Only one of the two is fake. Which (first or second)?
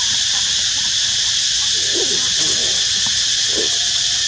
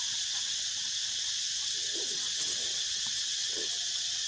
second